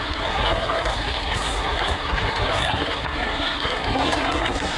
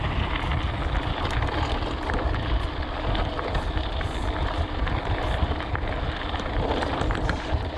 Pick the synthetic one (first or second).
first